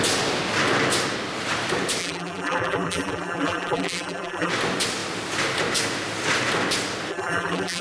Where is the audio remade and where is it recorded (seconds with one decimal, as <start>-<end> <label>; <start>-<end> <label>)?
0.0-2.0 recorded; 2.0-4.5 remade; 4.5-7.1 recorded; 7.1-7.8 remade